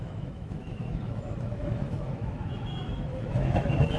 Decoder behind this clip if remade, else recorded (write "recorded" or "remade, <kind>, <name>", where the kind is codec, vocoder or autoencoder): remade, autoencoder, DAC-VAE